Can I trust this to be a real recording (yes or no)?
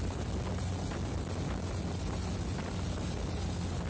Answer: yes